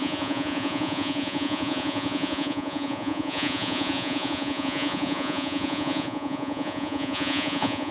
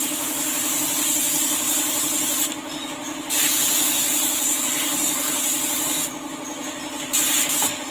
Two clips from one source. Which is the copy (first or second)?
first